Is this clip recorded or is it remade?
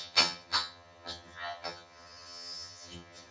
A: remade